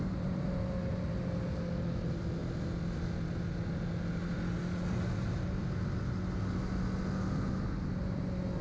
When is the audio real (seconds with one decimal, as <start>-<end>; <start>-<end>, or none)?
0.0-8.6